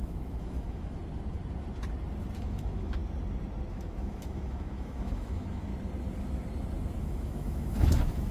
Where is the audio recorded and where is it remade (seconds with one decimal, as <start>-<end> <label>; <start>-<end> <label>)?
0.0-1.0 remade; 1.0-2.4 recorded; 2.4-3.0 remade; 3.0-3.7 recorded; 3.7-5.7 remade; 5.7-7.0 recorded; 7.0-8.3 remade

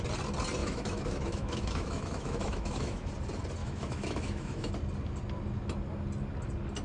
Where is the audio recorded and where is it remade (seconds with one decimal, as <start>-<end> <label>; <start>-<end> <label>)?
0.0-0.6 recorded; 0.6-3.1 remade; 3.1-3.6 recorded; 3.6-4.7 remade; 4.7-6.8 recorded

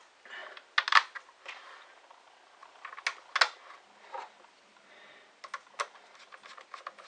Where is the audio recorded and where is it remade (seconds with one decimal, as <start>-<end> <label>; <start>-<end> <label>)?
0.0-7.1 recorded

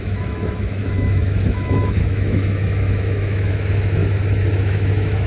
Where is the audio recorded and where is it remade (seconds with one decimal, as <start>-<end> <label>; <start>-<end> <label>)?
0.0-4.0 remade; 4.0-4.6 recorded; 4.6-5.3 remade